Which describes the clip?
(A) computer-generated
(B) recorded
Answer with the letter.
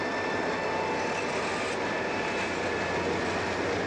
B